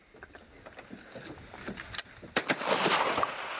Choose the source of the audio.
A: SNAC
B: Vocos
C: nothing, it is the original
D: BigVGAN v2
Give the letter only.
C